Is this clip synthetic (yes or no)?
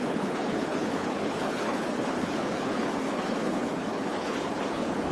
yes